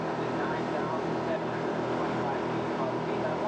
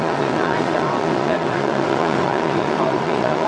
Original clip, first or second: first